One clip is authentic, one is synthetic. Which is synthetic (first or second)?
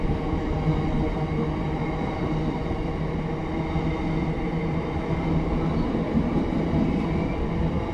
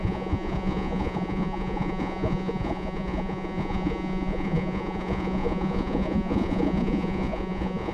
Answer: second